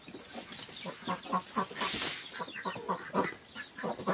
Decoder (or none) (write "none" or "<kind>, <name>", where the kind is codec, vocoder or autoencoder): none